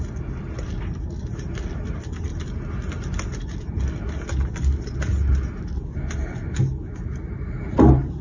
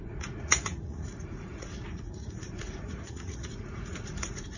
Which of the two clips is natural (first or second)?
first